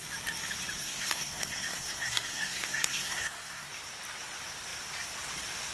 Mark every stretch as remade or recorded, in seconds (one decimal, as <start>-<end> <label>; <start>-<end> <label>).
0.0-0.8 recorded; 0.8-3.7 remade; 3.7-5.7 recorded